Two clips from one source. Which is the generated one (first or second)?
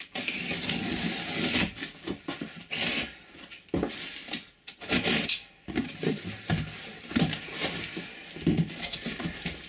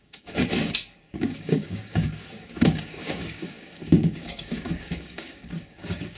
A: second